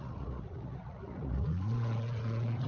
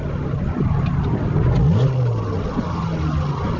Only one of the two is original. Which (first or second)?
second